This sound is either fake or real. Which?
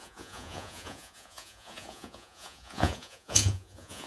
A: fake